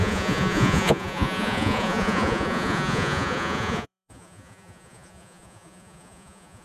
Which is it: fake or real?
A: fake